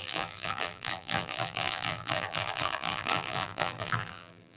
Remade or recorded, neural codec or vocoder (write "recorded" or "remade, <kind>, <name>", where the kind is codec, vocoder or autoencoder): remade, vocoder, BigVGAN v2